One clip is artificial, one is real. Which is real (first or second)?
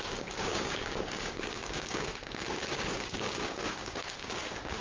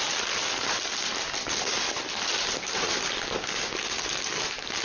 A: second